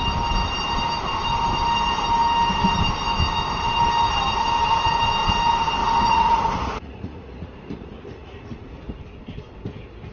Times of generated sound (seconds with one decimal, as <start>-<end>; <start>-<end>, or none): 5.8-9.0